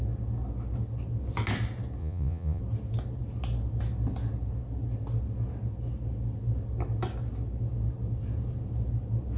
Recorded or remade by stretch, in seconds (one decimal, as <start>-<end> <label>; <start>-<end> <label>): 0.0-2.0 recorded; 2.0-2.6 remade; 2.6-9.4 recorded